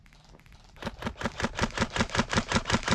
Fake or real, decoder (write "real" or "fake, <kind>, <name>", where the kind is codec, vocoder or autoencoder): real